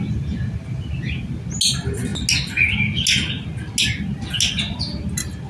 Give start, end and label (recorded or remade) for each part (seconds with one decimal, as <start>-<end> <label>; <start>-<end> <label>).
0.0-5.5 recorded